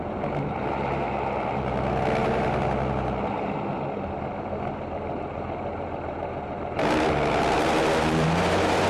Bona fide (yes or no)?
no